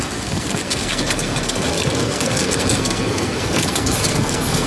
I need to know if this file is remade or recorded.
remade